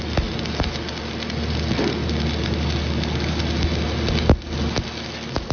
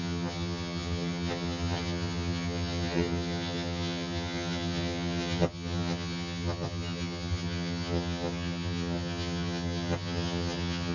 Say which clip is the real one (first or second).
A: first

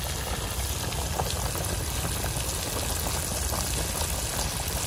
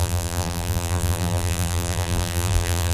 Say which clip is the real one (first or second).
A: first